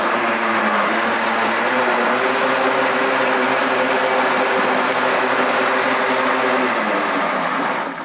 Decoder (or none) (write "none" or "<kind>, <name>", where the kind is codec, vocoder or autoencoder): none